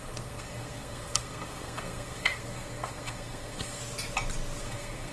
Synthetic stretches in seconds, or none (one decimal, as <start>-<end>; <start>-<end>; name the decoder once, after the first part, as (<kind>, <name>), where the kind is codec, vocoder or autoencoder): 0.0-3.8 (codec, SNAC); 4.6-5.1